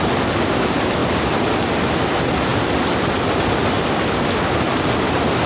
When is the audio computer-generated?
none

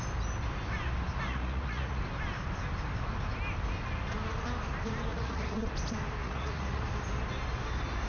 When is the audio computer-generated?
1.3-2.0; 5.1-5.7; 6.2-6.8

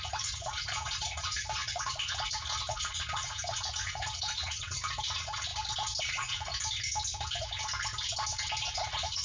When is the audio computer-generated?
0.0-5.5; 6.0-6.5; 8.6-9.2